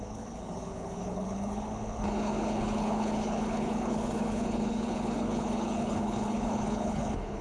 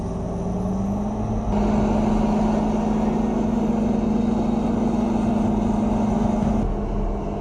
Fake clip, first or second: first